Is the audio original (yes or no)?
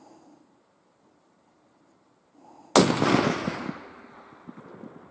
yes